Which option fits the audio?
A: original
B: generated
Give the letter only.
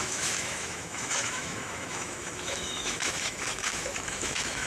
B